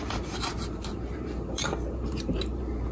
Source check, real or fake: fake